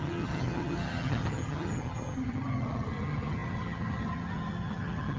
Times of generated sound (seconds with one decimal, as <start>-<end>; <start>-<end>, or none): 0.0-5.2